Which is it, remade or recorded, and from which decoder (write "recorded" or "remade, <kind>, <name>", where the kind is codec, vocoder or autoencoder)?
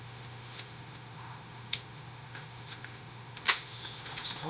remade, autoencoder, DAC-VAE